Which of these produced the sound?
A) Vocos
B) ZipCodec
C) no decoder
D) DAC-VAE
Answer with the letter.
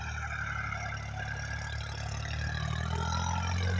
C